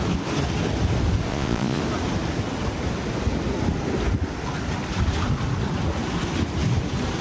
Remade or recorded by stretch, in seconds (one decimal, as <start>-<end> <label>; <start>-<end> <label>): 0.0-1.3 recorded; 1.3-1.8 remade; 1.8-7.2 recorded